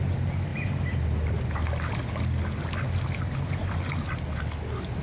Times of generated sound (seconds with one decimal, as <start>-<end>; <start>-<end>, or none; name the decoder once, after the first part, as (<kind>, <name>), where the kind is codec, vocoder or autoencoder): none